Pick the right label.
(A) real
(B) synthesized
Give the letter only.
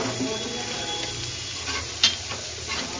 A